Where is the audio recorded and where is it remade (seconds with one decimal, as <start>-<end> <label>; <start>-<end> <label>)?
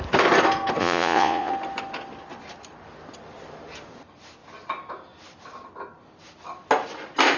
0.0-0.8 recorded; 0.8-1.5 remade; 1.5-7.4 recorded